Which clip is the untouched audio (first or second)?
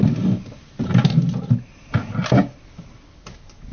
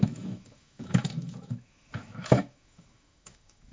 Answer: first